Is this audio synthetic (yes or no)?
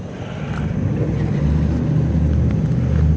no